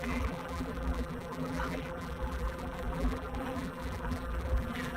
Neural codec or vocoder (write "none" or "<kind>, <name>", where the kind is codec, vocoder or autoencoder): vocoder, BigVGAN v2